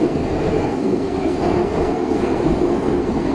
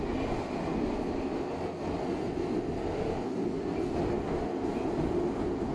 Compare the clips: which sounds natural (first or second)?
second